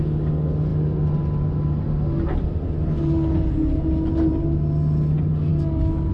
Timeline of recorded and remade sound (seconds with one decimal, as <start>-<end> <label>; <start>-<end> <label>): 0.0-5.5 recorded; 5.5-6.1 remade